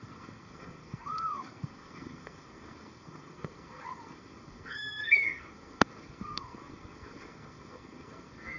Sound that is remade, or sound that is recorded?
remade